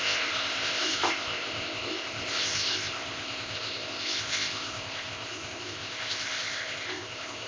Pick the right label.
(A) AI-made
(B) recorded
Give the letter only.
A